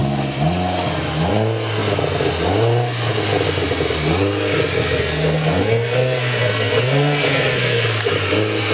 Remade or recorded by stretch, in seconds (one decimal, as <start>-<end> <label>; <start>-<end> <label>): 0.0-4.8 recorded; 4.8-8.1 remade; 8.1-8.7 recorded

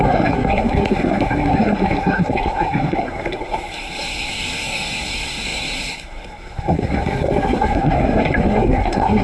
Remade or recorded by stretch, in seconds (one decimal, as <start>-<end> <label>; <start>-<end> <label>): 0.0-9.2 remade

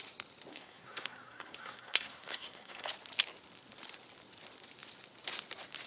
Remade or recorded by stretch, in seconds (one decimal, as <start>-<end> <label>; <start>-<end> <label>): 0.0-0.5 recorded; 0.5-2.9 remade; 2.9-5.9 recorded

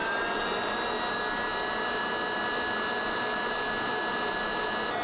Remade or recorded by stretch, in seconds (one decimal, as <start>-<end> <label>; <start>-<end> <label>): 0.0-5.0 recorded

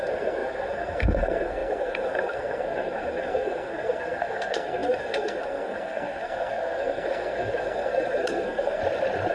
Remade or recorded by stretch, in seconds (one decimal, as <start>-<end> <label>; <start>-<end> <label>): 0.0-8.8 remade; 8.8-9.3 recorded